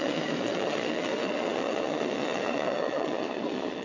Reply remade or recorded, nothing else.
remade